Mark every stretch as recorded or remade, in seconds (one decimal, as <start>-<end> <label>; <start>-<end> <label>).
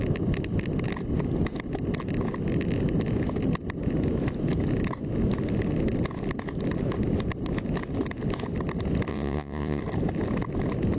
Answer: 0.0-9.1 recorded; 9.1-9.8 remade; 9.8-11.0 recorded